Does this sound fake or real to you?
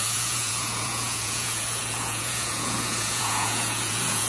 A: fake